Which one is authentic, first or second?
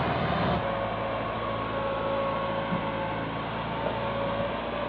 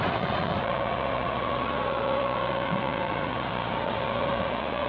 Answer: first